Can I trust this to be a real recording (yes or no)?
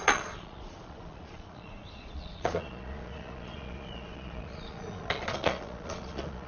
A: no